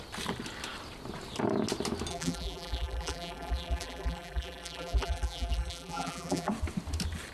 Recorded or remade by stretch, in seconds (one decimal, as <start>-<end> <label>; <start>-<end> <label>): 0.0-2.1 recorded; 2.1-6.5 remade; 6.5-7.3 recorded